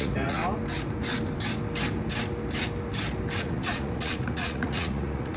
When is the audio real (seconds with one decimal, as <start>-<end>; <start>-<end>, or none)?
0.4-3.4